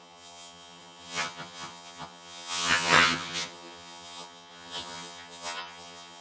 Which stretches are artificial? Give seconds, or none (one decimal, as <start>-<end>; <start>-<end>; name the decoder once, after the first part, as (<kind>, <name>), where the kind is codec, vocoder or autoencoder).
0.0-6.2 (vocoder, HiFi-GAN)